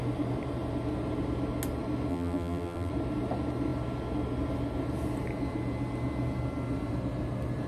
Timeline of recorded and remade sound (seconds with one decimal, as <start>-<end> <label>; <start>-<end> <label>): 0.0-2.1 recorded; 2.1-2.9 remade; 2.9-7.7 recorded